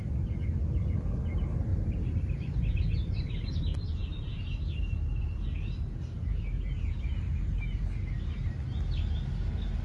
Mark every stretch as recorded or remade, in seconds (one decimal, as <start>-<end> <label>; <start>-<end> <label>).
0.0-1.7 recorded; 1.7-3.6 remade; 3.6-9.8 recorded